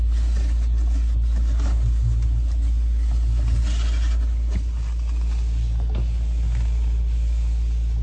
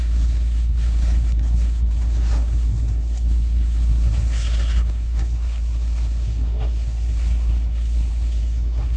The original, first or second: first